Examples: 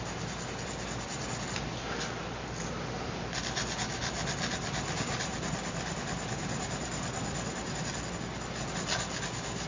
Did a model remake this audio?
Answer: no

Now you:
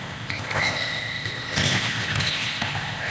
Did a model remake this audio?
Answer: yes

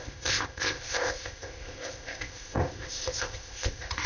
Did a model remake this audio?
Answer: yes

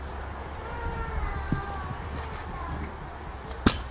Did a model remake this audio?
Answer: no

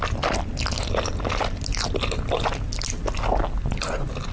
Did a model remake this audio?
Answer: no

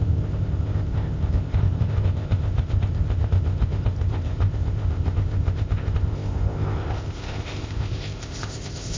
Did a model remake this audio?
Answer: yes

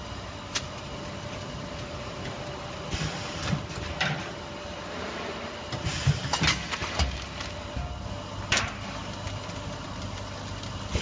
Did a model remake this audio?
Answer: no